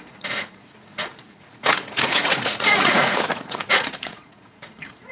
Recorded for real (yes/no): no